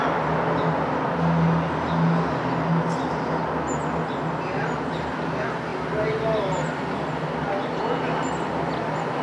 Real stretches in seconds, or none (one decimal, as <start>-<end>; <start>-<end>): 0.0-9.2